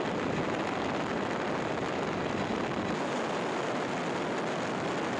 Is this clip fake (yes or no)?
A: no